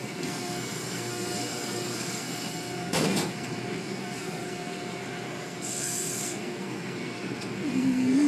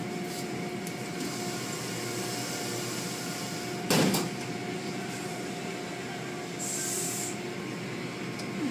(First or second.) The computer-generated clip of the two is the first